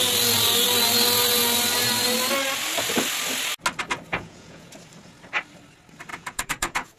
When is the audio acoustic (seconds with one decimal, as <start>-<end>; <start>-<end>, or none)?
0.0-4.1; 4.7-6.1